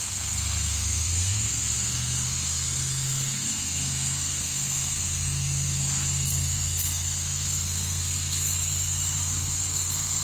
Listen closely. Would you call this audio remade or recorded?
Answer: remade